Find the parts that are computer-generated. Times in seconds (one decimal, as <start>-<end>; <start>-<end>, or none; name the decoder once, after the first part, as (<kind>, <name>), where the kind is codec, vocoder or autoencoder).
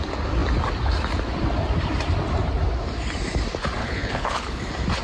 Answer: 3.8-4.6 (codec, HILCodec)